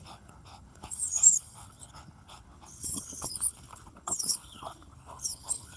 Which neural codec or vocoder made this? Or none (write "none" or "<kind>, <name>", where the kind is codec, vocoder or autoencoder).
codec, HILCodec